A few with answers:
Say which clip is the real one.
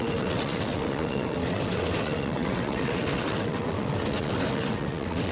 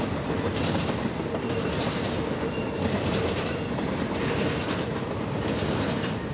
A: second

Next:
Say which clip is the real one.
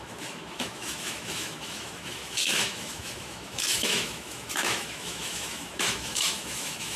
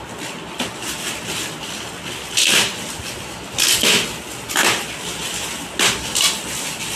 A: second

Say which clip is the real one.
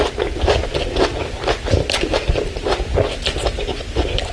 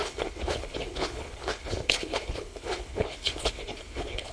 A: first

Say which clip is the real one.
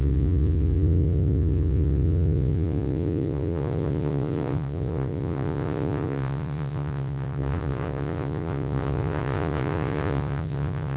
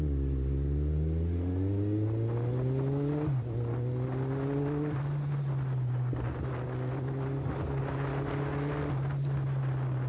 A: second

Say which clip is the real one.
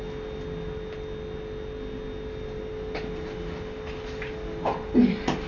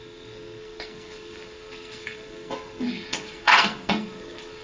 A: first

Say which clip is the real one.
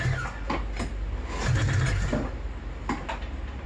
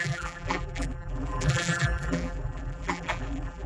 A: first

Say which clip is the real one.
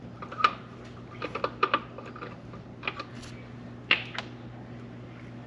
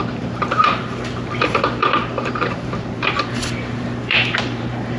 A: first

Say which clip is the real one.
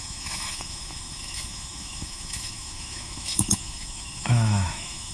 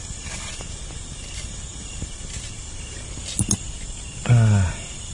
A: second